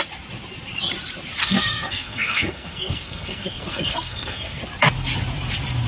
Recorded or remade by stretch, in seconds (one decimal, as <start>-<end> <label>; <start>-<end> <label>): 0.0-1.4 recorded; 1.4-4.6 remade; 4.6-5.9 recorded